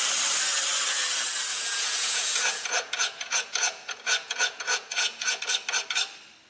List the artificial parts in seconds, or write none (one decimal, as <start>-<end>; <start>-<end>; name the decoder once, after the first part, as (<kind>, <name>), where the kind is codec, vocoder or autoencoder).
1.5-5.4 (vocoder, Vocos)

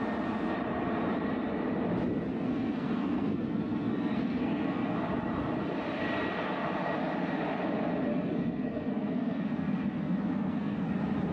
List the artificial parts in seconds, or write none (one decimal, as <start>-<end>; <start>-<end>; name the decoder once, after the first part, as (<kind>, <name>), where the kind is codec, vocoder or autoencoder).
2.3-5.0 (codec, SNAC); 8.1-10.9

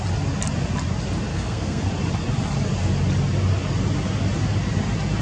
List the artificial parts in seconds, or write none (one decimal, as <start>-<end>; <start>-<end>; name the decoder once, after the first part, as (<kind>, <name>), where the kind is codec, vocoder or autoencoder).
1.3-1.9 (codec, SNAC)

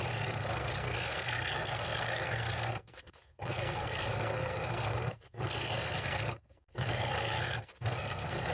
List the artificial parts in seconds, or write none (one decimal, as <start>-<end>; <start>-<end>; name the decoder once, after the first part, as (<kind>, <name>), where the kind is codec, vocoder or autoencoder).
0.0-8.5 (codec, SNAC)

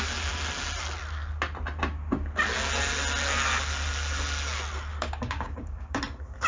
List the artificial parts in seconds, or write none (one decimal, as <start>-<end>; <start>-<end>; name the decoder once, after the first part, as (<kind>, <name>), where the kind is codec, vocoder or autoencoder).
4.9-6.0 (codec, DAC)

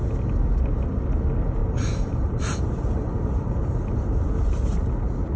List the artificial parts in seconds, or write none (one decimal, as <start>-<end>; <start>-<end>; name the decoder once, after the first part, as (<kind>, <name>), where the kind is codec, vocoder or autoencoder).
1.6-4.8 (vocoder, BigVGAN v2)